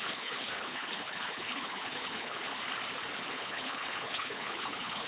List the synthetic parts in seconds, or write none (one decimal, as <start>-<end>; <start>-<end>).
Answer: 0.0-2.5; 3.3-5.1